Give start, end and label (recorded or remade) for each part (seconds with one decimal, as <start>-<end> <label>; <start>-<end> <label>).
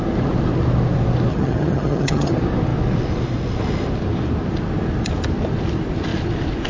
0.0-1.3 recorded; 1.3-2.3 remade; 2.3-6.7 recorded